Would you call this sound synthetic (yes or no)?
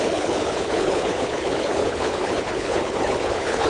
yes